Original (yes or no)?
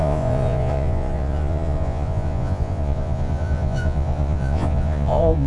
no